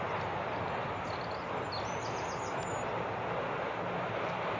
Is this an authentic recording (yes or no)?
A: yes